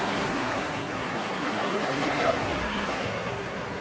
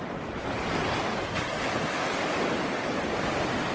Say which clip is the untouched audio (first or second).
second